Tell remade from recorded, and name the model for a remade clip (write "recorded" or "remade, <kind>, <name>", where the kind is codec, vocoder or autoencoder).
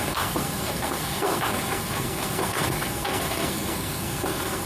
remade, codec, SNAC